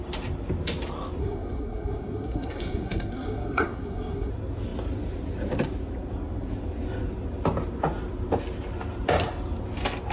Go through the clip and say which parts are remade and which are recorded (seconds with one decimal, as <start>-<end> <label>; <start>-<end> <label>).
0.0-1.2 recorded; 1.2-4.3 remade; 4.3-10.1 recorded